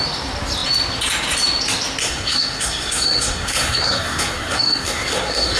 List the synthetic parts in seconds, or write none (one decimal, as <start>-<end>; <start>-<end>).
2.0-5.6